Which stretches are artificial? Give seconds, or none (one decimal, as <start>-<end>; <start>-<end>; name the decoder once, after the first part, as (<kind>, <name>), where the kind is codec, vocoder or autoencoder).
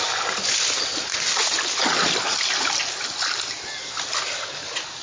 none